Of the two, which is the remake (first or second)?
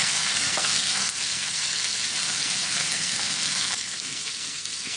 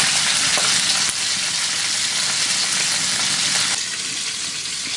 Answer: first